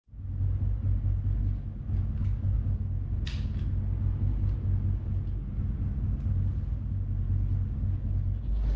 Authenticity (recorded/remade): recorded